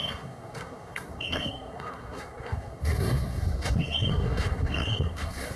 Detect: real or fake fake